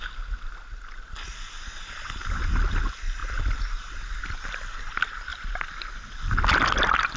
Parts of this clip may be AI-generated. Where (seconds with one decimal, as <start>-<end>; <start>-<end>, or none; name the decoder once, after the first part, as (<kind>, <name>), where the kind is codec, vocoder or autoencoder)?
none